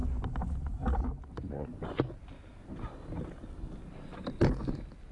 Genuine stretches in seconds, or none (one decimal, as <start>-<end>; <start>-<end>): 0.0-5.1